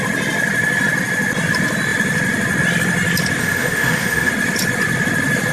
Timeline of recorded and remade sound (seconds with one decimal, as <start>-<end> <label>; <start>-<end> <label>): 0.0-3.4 recorded; 3.4-4.3 remade; 4.3-5.5 recorded